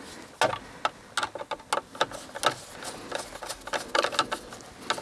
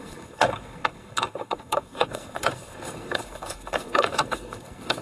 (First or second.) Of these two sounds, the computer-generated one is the second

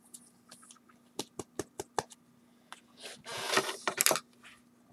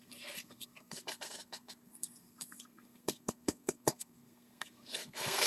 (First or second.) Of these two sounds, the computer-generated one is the second